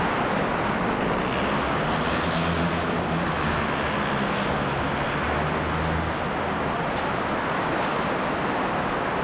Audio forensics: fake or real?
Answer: real